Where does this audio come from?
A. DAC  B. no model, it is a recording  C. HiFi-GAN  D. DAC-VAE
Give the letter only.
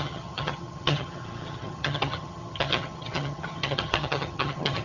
C